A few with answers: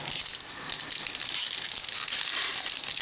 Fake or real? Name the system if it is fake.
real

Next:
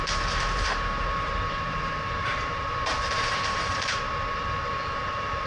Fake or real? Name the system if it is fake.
fake, vocoder, BigVGAN v2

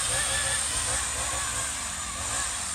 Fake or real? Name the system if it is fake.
real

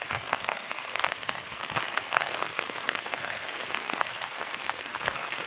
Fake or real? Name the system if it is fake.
fake, codec, SNAC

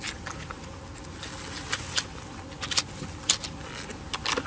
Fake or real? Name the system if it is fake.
real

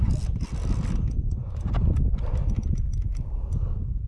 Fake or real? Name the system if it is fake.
real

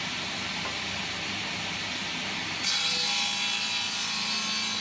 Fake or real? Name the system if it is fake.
real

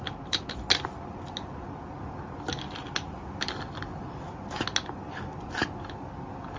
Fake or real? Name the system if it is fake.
real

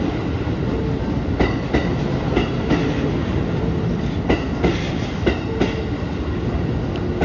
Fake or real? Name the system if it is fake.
real